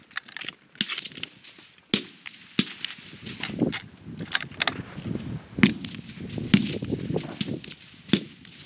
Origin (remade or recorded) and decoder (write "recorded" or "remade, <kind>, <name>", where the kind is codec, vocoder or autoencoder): recorded